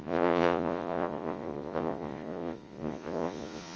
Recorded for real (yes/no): no